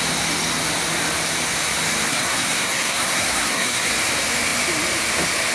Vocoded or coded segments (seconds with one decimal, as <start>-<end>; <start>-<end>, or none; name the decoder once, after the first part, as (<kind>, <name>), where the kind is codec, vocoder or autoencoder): 2.1-3.9 (codec, SNAC)